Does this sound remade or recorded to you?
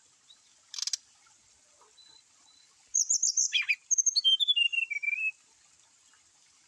recorded